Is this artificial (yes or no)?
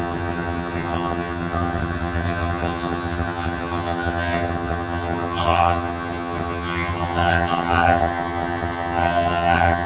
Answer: yes